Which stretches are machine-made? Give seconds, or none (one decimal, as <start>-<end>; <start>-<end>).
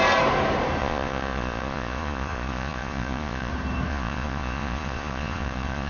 0.8-3.5; 3.9-5.9